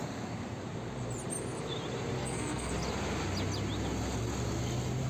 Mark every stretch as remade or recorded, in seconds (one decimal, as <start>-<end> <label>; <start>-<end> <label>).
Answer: 0.0-2.2 recorded; 2.2-2.7 remade; 2.7-5.1 recorded